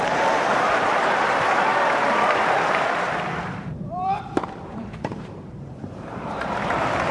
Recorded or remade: remade